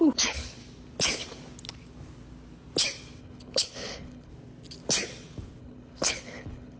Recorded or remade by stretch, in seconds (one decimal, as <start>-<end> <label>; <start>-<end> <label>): 0.0-0.6 remade; 0.6-3.2 recorded; 3.2-4.3 remade; 4.3-5.6 recorded; 5.6-6.8 remade